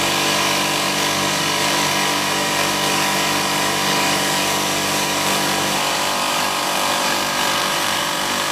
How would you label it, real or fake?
fake